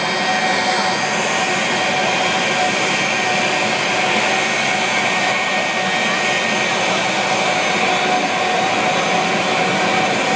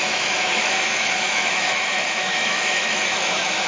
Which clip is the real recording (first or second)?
first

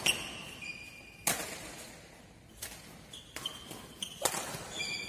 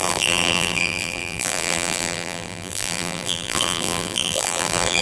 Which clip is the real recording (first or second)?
first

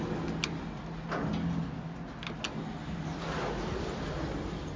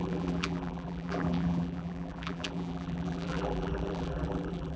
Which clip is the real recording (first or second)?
first